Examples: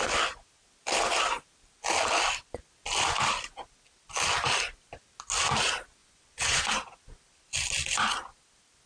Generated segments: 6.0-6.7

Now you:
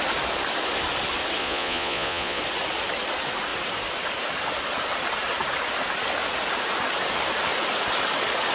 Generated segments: 1.4-2.4

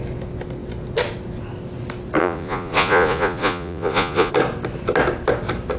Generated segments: 2.2-4.3

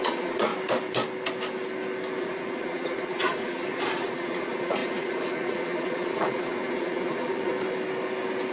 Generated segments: 0.0-0.5; 2.2-7.5

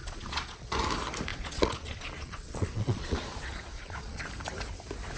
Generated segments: 0.0-0.7; 1.3-4.3

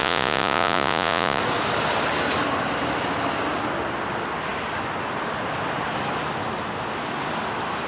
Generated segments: 0.0-1.4

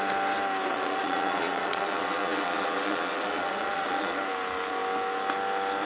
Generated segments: 0.7-4.2

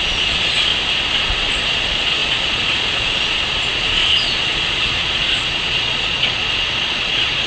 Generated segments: 0.0-0.7; 1.5-7.5